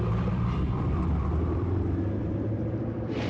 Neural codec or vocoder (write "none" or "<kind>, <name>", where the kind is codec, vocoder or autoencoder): vocoder, BigVGAN v2